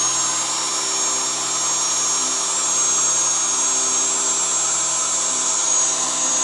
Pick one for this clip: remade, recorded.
recorded